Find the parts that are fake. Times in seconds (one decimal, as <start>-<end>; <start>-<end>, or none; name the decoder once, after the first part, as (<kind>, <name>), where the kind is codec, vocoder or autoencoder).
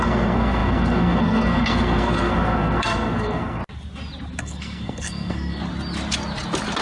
0.0-3.6 (codec, SNAC); 4.4-5.6